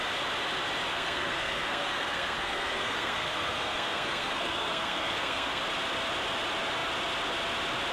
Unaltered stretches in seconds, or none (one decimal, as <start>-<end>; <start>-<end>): 0.0-0.9; 5.6-7.9

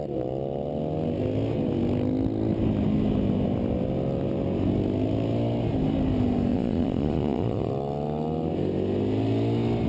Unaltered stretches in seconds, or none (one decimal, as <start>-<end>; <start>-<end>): 0.0-6.5; 7.7-9.9

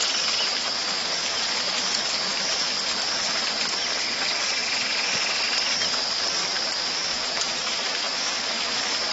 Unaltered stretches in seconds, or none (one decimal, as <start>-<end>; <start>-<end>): 0.0-6.4; 8.6-9.1

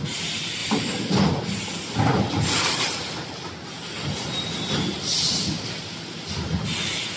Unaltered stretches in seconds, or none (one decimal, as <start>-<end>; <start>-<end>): 0.0-7.2

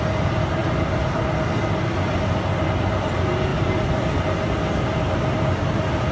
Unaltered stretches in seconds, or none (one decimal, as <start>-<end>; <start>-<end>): 0.0-6.1

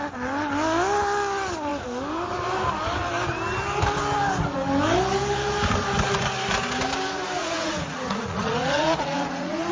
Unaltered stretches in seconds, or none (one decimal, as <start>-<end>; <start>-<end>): 0.0-7.4

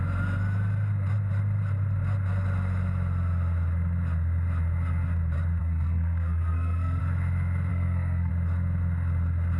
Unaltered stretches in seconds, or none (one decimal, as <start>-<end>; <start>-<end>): 0.0-5.6; 7.0-7.7; 8.3-9.6

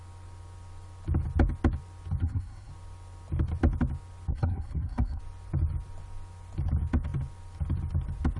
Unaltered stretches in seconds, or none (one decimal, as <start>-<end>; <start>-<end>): 0.0-2.2; 2.7-4.3; 5.2-8.4